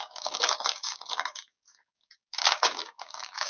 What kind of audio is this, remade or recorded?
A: remade